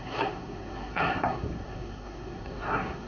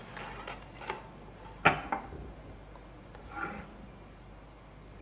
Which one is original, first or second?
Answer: second